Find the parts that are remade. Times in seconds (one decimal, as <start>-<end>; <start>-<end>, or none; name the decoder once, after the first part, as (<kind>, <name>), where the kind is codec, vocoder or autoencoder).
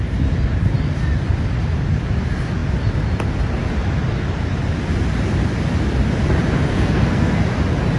6.7-7.4 (codec, SNAC)